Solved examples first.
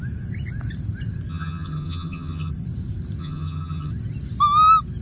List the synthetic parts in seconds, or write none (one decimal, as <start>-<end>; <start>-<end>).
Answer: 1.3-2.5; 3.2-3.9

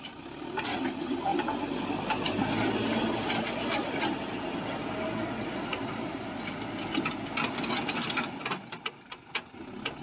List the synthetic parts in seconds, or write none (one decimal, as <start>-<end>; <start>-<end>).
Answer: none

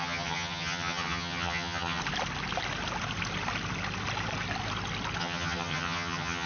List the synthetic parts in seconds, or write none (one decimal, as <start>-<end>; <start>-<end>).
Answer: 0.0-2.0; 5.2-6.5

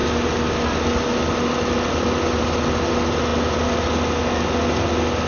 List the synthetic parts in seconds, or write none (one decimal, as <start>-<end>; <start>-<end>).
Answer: none

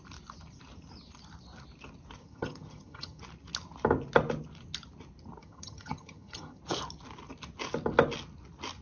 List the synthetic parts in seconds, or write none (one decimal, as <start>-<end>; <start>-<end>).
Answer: 2.2-3.2; 5.4-6.6

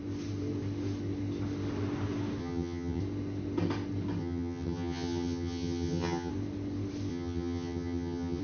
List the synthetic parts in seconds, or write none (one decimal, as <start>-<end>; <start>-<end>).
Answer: 2.4-3.0; 4.2-6.3; 7.1-8.4

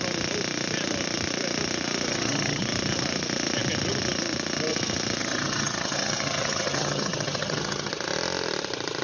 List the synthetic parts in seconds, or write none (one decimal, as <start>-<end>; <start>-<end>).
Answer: 2.1-2.6; 5.2-7.9